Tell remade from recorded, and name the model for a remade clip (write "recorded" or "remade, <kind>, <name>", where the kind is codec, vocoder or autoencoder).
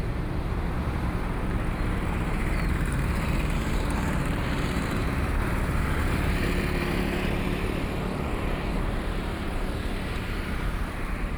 remade, vocoder, BigVGAN v2